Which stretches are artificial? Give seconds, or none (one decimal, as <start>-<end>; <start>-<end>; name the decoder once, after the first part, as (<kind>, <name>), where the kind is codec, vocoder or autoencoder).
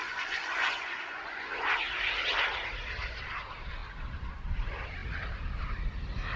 0.0-1.7 (vocoder, Vocos)